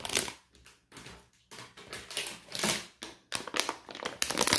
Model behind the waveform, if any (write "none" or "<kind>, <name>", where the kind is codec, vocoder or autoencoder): none